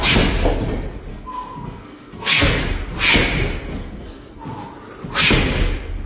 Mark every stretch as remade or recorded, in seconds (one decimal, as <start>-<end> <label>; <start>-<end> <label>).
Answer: 0.0-1.1 recorded; 1.1-2.6 remade; 2.6-3.7 recorded; 3.7-4.4 remade; 4.4-6.1 recorded